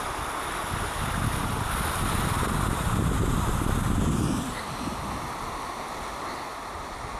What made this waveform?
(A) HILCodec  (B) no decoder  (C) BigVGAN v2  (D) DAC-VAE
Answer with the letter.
B